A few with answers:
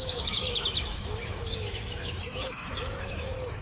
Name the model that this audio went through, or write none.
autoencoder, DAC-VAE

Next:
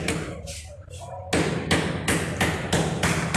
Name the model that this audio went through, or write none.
none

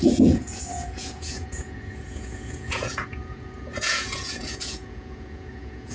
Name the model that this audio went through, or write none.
vocoder, Vocos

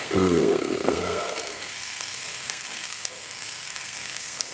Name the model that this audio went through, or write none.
codec, SNAC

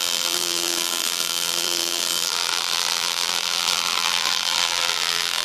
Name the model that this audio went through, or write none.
vocoder, BigVGAN v2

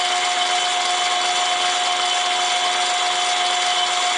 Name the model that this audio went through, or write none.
none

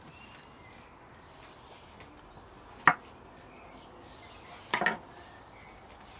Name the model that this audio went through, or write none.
none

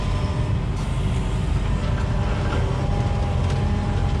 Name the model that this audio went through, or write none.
none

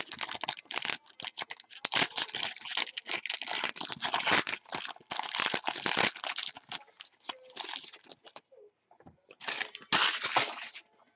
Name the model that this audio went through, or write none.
none